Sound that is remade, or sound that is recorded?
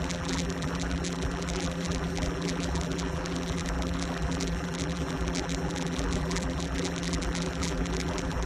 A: remade